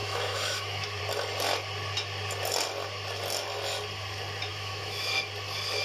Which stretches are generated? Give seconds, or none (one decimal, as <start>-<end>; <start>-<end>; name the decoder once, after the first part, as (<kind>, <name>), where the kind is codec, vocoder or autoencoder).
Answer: 0.0-1.0 (autoencoder, DAC-VAE); 4.5-5.1